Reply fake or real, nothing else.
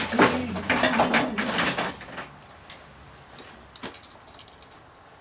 real